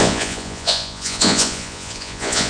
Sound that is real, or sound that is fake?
fake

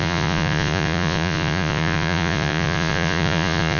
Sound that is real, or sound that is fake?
fake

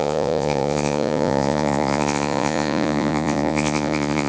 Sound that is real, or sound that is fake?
fake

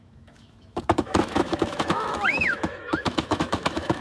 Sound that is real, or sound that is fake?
fake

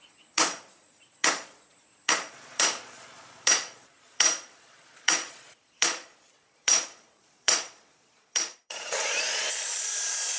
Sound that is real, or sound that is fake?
fake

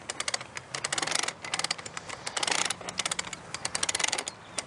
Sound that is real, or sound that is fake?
real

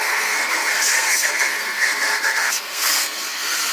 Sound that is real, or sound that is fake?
fake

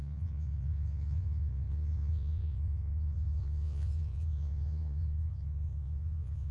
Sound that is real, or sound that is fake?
fake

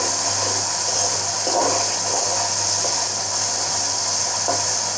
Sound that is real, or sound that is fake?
real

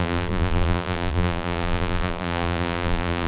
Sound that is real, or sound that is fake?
fake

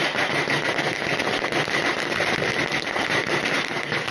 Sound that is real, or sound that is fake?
real